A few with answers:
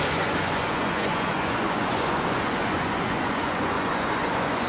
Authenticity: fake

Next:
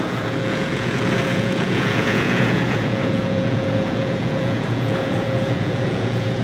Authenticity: fake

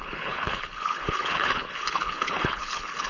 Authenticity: fake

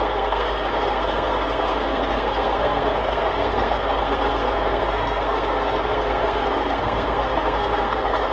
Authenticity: fake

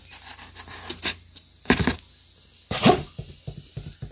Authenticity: real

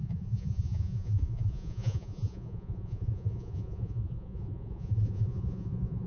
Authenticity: fake